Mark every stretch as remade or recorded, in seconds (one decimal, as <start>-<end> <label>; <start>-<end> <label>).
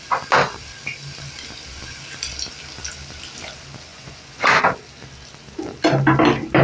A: 0.0-3.9 recorded; 3.9-4.6 remade; 4.6-6.6 recorded